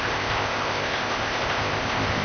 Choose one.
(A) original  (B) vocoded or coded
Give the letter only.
B